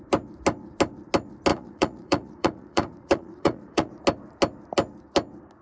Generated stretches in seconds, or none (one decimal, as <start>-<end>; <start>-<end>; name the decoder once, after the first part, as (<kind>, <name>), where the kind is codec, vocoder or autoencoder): 1.5-3.9 (vocoder, Vocos)